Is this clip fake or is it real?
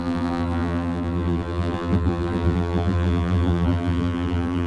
fake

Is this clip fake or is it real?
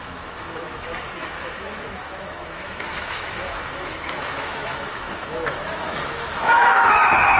fake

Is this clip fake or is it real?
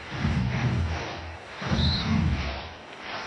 fake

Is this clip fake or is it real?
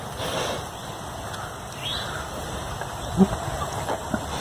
fake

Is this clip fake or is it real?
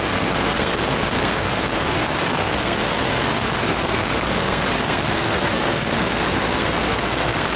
fake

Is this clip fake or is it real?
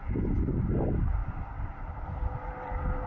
real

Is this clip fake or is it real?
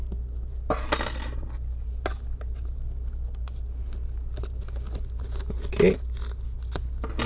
real